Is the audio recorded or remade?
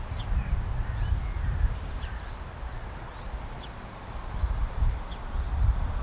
recorded